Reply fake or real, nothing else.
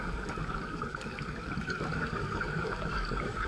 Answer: fake